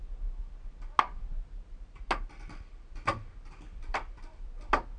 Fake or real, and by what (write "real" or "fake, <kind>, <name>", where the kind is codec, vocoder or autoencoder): real